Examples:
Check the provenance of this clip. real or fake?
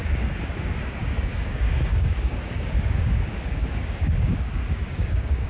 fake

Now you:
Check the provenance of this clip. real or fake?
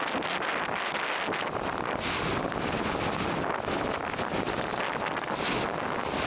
real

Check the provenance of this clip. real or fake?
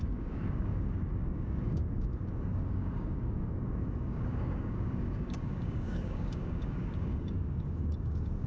fake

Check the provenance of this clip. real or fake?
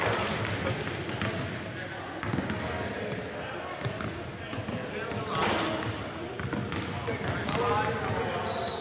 real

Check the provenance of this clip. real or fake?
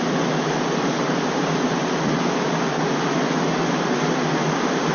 real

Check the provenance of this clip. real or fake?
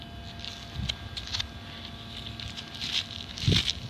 real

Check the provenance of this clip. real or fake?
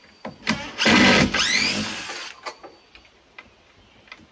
real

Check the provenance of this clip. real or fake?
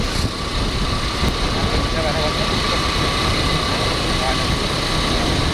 real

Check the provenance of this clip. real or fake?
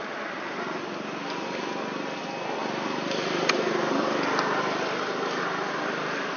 real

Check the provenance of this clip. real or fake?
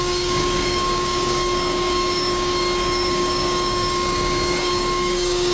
fake